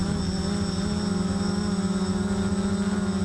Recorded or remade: recorded